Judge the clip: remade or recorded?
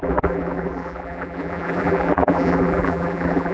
remade